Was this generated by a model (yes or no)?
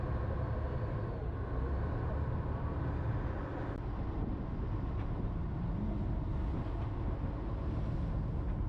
no